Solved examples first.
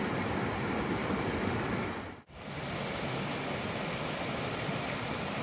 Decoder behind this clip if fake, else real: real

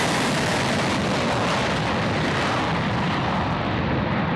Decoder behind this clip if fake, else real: real